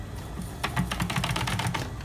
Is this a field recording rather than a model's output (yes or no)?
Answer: yes